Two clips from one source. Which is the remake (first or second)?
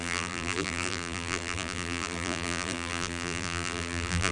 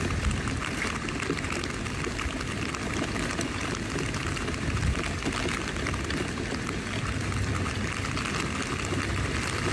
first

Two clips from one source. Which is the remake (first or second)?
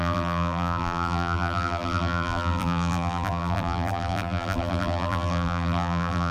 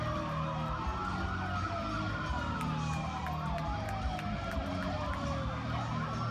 first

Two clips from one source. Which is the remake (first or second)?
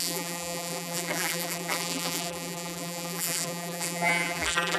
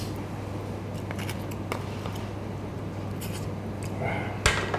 first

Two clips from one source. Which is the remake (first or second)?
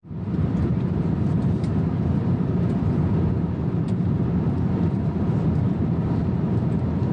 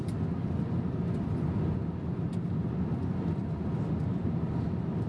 first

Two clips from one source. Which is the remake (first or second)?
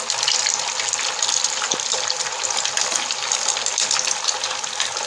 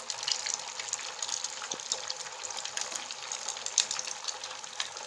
second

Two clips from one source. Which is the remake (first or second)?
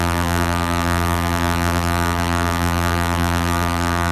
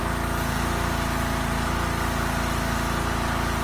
first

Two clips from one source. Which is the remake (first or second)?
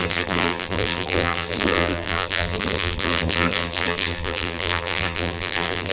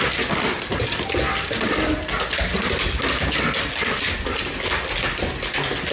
first